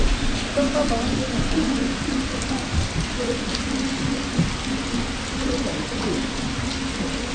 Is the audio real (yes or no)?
yes